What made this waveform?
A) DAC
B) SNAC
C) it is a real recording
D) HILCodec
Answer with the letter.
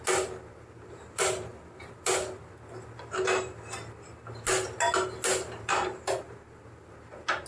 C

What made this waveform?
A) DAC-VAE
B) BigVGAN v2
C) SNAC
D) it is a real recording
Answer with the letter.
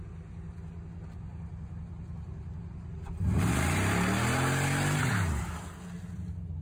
D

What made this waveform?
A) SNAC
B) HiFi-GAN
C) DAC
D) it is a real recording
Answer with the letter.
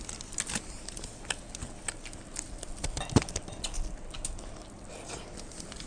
D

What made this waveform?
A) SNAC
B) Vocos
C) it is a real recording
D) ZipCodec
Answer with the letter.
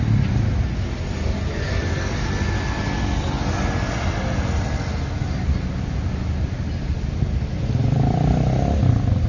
C